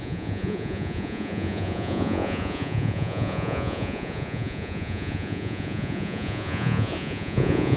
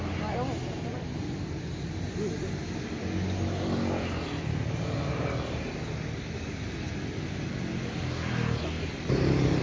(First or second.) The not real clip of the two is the first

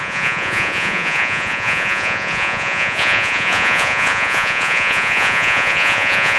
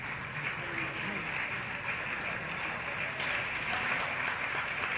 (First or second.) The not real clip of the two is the first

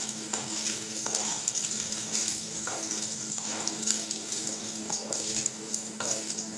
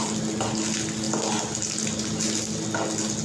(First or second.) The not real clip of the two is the first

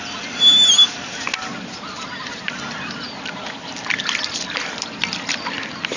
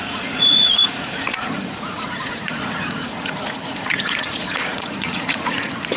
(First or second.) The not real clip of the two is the second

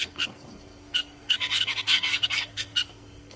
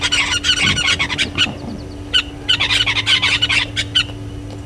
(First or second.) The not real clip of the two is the first